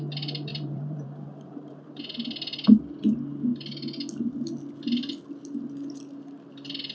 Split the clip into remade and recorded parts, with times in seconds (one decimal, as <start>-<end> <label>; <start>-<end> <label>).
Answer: 0.0-0.5 recorded; 0.5-2.0 remade; 2.0-6.9 recorded